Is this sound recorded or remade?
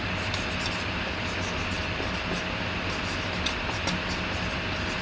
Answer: recorded